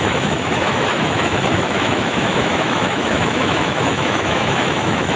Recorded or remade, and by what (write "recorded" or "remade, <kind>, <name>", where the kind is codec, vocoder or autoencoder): remade, autoencoder, DAC-VAE